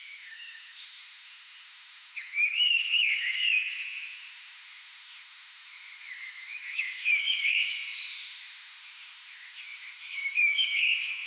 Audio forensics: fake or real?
fake